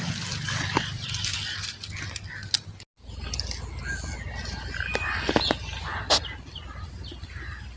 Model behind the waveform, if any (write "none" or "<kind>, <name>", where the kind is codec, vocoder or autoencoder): none